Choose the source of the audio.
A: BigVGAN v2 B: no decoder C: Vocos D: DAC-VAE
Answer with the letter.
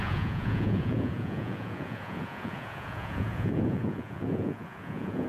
C